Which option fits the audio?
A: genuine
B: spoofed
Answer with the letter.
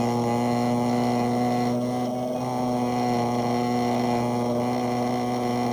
A